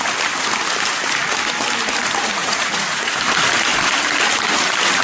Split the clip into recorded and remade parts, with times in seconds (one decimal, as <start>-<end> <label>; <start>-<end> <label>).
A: 0.0-2.4 recorded; 2.4-3.1 remade; 3.1-5.0 recorded